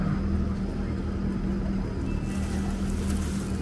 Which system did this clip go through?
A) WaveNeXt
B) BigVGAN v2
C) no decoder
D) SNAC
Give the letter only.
C